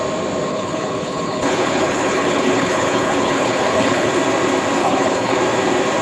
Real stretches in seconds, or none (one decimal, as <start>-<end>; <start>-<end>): 0.0-0.5; 4.1-4.8; 5.4-6.0